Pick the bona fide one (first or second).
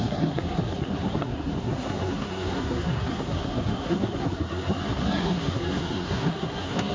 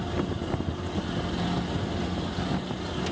second